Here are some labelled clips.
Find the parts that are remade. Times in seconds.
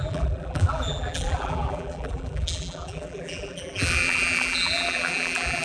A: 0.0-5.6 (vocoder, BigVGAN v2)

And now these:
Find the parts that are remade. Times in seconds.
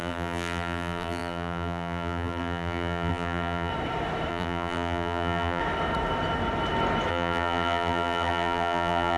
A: 0.0-3.7 (vocoder, BigVGAN v2); 4.3-5.6; 7.1-9.2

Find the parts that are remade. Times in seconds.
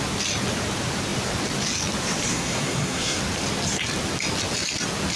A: 2.3-3.2 (codec, SNAC)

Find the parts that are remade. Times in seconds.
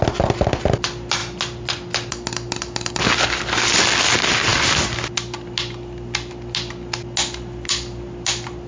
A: none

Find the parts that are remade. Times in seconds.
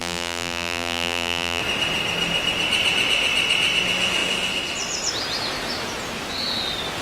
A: 0.0-1.6 (vocoder, BigVGAN v2)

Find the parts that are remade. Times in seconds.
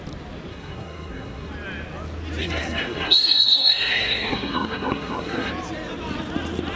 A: 0.5-1.5 (codec, SNAC); 2.4-5.5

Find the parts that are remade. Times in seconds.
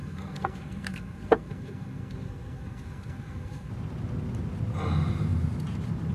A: 0.0-3.7 (codec, SNAC)